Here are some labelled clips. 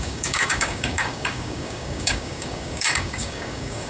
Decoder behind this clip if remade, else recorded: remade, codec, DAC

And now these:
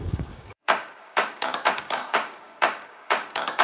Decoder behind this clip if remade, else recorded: remade, codec, DAC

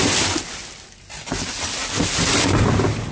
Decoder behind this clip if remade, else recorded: recorded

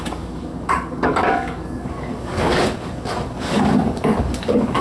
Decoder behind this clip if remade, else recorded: remade, codec, DAC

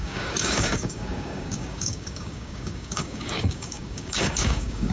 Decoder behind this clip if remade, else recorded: remade, codec, DAC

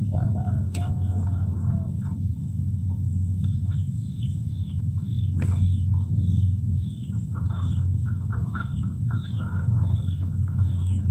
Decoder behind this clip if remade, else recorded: remade, codec, DAC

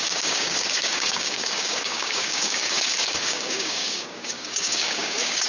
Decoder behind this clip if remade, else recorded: remade, codec, DAC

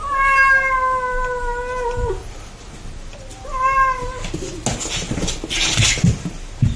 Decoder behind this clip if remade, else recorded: recorded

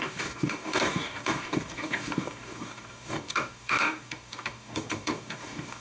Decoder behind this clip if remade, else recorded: remade, codec, DAC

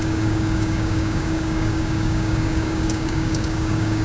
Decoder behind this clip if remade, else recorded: remade, codec, DAC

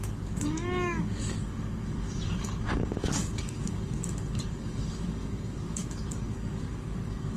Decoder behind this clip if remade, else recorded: remade, codec, DAC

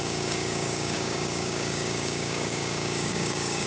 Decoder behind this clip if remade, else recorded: remade, codec, DAC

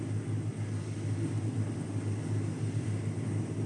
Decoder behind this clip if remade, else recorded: recorded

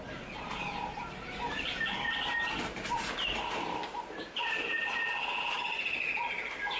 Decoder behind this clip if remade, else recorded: recorded